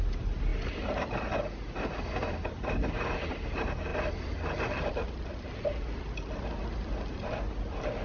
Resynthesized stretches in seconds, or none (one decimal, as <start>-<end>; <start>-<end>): none